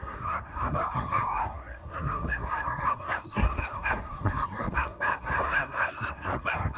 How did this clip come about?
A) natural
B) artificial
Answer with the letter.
B